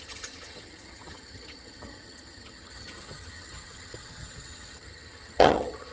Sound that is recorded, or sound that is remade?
remade